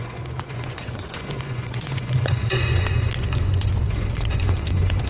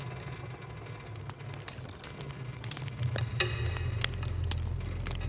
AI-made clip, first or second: first